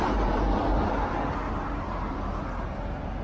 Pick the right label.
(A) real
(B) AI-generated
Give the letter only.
A